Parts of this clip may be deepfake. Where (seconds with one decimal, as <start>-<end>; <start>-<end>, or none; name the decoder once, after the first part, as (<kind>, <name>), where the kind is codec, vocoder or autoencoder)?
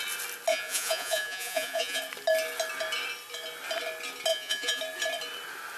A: 0.5-2.0 (vocoder, Vocos); 4.3-4.8